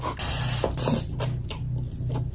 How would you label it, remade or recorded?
recorded